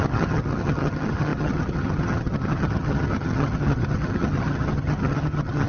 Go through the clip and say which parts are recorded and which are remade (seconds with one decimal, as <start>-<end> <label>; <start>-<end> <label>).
0.0-5.7 remade